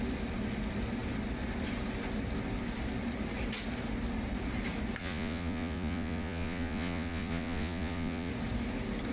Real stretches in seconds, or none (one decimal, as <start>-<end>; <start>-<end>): 0.0-5.0; 8.3-9.1

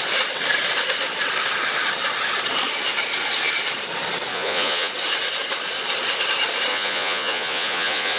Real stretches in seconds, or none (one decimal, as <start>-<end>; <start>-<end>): 0.0-4.3; 4.9-6.7

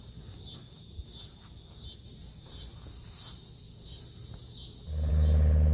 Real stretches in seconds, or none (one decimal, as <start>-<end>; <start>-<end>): 0.0-5.7

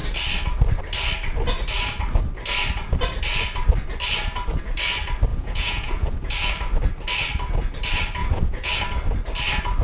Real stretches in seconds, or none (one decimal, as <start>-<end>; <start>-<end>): 0.0-5.3; 6.3-8.2; 8.7-9.8

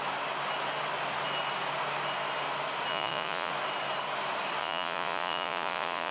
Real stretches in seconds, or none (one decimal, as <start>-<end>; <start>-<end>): 0.0-2.9; 3.5-4.6

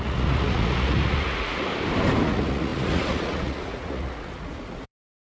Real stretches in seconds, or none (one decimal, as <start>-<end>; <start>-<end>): 1.7-2.2

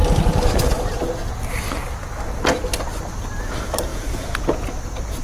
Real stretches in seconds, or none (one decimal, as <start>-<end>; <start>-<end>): 0.0-3.9; 4.7-5.2

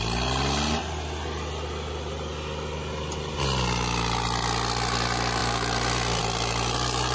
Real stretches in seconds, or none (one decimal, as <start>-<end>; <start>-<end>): 0.0-7.1